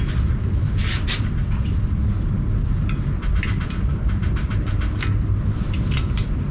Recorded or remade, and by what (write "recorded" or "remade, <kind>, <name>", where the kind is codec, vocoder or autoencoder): recorded